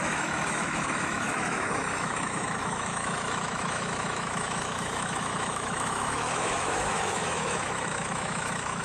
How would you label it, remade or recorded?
remade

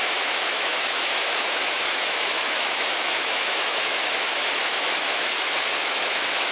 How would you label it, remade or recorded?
remade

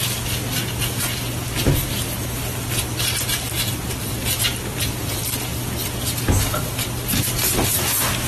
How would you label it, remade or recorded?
recorded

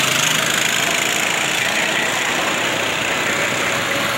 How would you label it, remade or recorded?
recorded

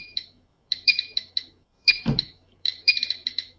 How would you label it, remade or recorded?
remade